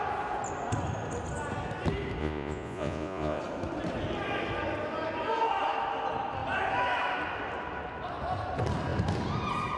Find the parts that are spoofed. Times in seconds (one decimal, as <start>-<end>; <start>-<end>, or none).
2.2-3.4